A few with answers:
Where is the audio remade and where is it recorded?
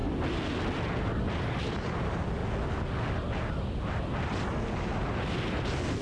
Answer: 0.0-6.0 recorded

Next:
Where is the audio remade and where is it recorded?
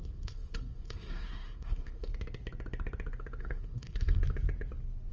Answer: 0.0-2.1 remade; 2.1-3.4 recorded; 3.4-4.2 remade; 4.2-5.1 recorded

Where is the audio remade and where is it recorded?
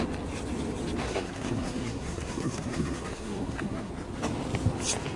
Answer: 0.0-1.0 recorded; 1.0-3.9 remade; 3.9-5.2 recorded